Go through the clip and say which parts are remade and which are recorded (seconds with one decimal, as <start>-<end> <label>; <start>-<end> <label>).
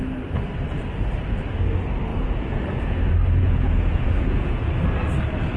0.0-2.1 recorded; 2.1-3.0 remade; 3.0-3.4 recorded; 3.4-4.7 remade; 4.7-5.6 recorded